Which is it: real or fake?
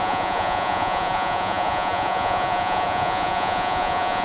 fake